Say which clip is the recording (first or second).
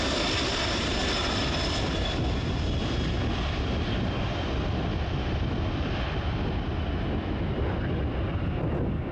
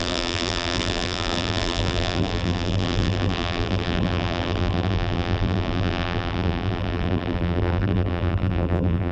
first